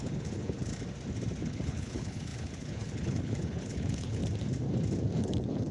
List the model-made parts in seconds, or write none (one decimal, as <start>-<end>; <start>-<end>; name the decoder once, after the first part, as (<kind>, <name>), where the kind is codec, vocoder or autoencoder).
0.0-0.7 (codec, HILCodec); 1.4-4.2; 5.2-5.7